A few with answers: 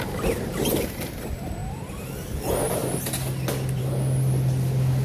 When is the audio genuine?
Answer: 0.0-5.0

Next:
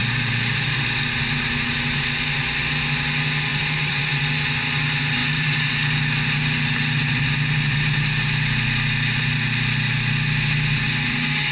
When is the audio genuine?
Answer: 0.8-3.5; 4.0-5.2; 5.7-11.5

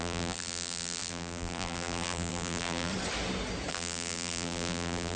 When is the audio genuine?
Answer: 2.9-3.7